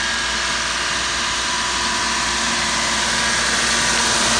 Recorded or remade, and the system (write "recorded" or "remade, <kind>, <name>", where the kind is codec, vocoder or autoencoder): recorded